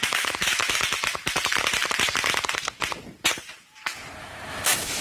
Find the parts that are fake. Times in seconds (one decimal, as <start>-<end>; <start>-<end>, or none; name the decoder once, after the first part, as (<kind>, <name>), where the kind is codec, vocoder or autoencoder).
0.0-0.8 (autoencoder, DAC-VAE); 4.2-5.0